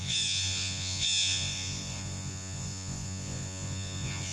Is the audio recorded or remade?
remade